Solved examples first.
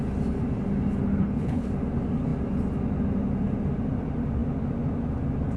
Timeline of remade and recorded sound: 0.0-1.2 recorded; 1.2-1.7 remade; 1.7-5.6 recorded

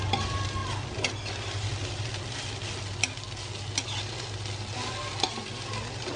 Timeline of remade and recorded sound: 0.0-6.2 recorded

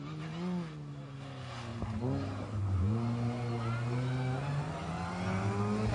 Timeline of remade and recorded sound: 0.0-5.9 recorded

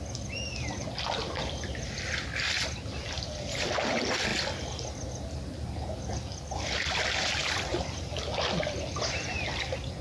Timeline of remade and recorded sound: 0.0-10.0 recorded

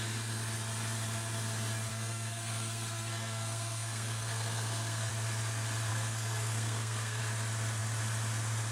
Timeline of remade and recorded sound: 0.0-1.9 recorded; 1.9-5.1 remade; 5.1-5.9 recorded; 5.9-7.2 remade; 7.2-8.7 recorded